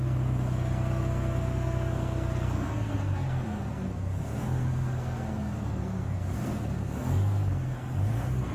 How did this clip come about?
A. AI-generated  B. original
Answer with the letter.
A